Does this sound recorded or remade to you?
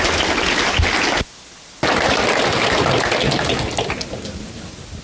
recorded